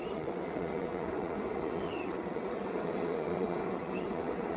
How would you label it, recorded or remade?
remade